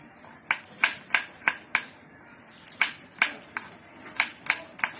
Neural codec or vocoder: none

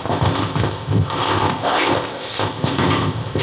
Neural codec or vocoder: codec, ZipCodec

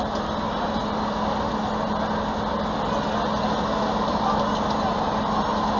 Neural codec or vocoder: none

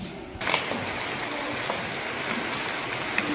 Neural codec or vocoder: none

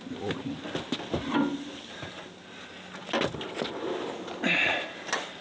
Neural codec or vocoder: none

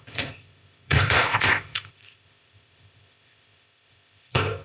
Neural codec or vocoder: codec, ZipCodec